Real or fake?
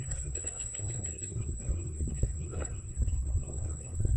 fake